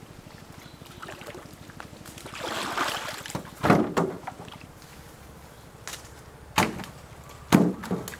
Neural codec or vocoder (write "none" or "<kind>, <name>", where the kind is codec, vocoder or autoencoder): none